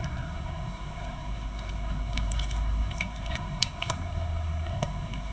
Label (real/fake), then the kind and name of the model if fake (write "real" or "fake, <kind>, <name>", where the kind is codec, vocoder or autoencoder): fake, codec, SNAC